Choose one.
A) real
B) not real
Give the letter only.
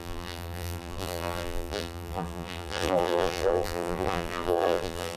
B